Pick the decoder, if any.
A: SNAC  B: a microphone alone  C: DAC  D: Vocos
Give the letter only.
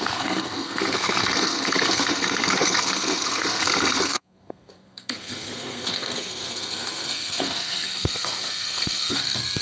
A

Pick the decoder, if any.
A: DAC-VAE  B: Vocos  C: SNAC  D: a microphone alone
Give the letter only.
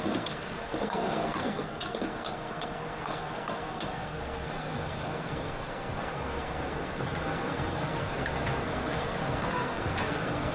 C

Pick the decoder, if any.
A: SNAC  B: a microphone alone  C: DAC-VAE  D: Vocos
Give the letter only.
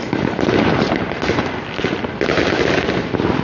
B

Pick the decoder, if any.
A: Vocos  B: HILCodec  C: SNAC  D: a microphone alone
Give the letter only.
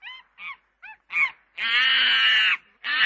D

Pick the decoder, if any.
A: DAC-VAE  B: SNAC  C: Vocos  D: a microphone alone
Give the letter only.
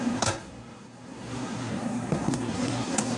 B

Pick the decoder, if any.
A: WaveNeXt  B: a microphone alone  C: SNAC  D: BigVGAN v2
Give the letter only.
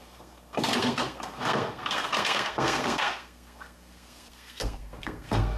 C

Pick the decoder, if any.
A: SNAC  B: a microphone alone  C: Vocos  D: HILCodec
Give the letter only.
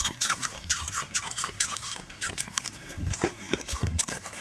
A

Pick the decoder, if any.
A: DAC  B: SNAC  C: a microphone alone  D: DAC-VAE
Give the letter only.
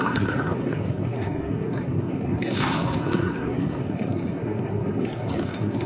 B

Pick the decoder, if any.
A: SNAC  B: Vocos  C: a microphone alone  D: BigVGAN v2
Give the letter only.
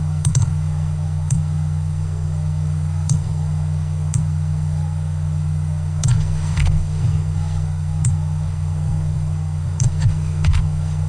A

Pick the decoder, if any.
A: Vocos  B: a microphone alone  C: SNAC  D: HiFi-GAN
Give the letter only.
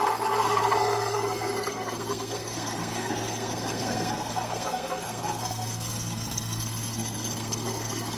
C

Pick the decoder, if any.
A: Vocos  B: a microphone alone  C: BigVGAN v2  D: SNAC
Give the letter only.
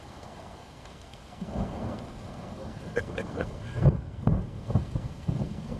D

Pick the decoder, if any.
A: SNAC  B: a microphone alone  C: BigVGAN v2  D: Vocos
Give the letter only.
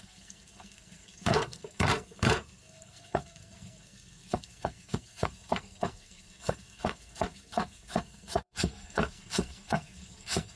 A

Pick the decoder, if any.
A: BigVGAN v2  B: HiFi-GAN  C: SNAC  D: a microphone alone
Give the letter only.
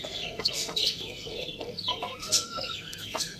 C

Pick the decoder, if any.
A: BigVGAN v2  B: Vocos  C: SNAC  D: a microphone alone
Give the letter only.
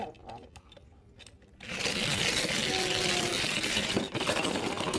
D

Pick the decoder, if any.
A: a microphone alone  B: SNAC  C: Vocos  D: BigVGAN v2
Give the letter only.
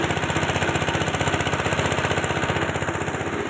A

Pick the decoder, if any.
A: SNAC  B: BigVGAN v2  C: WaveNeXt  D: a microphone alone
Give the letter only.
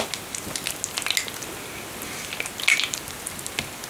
D